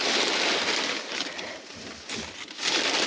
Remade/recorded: recorded